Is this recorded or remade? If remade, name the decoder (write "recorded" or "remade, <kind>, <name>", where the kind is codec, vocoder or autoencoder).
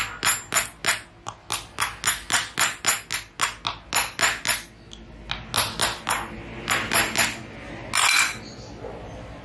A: recorded